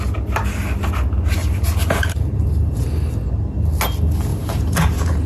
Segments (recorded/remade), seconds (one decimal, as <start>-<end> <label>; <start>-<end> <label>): 0.0-1.4 recorded; 1.4-3.1 remade; 3.1-4.3 recorded; 4.3-5.3 remade